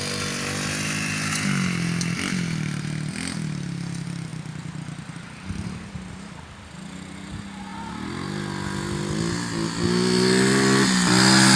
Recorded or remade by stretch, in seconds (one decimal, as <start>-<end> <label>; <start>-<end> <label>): 0.0-11.6 recorded